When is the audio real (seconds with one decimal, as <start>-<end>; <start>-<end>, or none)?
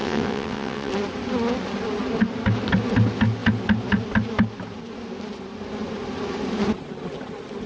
0.9-7.7